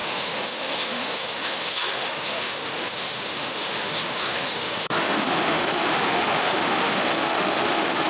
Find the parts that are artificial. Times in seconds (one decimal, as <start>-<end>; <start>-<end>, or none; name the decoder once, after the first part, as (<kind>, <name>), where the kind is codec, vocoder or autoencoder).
0.0-8.1 (autoencoder, DAC-VAE)